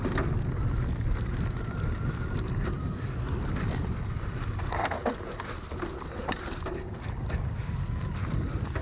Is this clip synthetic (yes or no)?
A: no